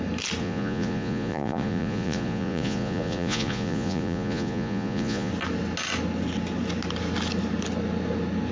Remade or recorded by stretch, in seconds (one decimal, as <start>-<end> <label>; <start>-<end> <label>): 0.0-0.4 recorded; 0.4-5.3 remade; 5.3-8.5 recorded